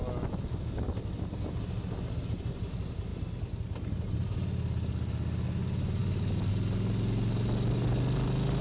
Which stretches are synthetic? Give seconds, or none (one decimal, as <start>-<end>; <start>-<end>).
6.0-6.5